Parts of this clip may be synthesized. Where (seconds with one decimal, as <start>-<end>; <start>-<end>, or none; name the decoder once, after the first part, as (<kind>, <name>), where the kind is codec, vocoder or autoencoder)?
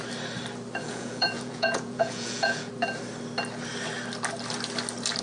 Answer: 0.8-2.7 (vocoder, Vocos)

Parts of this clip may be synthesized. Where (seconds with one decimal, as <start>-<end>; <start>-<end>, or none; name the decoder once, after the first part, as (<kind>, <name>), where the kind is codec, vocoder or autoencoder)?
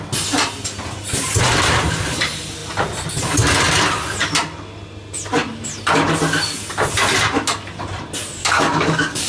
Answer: 8.4-9.3 (codec, DAC)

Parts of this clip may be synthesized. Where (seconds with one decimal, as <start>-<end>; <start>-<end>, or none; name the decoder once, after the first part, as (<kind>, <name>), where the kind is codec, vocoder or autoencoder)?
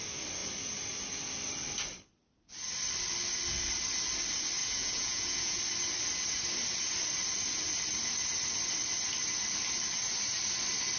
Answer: 4.6-5.6 (vocoder, Vocos)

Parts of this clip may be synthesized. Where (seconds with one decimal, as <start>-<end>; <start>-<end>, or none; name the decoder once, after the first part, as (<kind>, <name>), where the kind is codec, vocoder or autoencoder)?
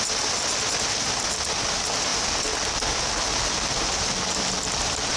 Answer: none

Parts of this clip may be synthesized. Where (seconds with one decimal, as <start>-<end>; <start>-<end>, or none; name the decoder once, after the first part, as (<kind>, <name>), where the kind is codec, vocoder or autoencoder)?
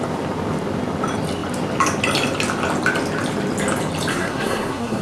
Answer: 4.1-5.0 (codec, SNAC)